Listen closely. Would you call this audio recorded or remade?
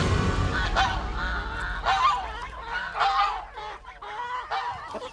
recorded